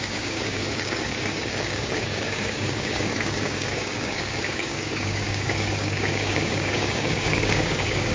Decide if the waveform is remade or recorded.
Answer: remade